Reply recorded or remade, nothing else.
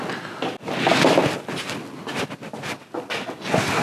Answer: recorded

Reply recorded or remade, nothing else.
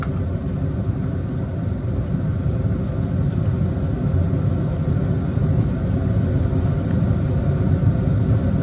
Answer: recorded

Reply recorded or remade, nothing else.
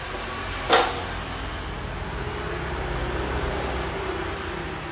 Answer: recorded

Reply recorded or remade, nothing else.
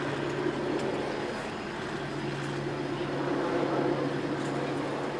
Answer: recorded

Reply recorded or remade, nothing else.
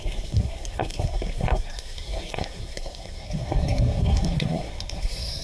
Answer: remade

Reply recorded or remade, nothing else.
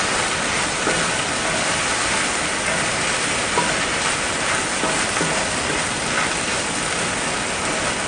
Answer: recorded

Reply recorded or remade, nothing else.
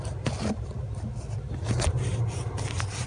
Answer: recorded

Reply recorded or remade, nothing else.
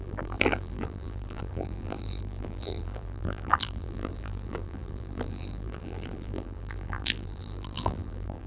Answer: remade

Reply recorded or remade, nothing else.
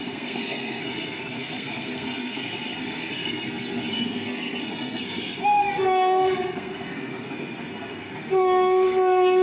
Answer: remade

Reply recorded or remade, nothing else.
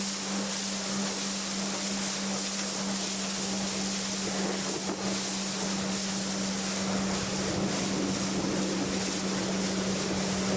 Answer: recorded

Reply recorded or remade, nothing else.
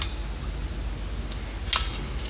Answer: recorded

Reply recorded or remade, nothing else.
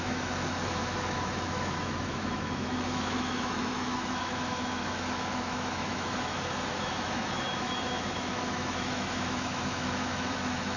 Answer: remade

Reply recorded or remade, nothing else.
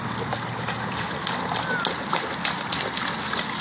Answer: recorded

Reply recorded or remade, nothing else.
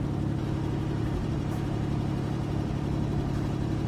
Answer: remade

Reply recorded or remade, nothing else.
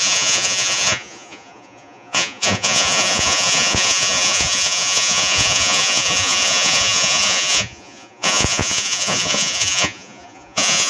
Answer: remade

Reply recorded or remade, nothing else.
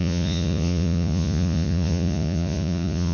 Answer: remade